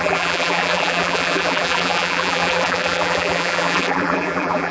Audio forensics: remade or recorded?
remade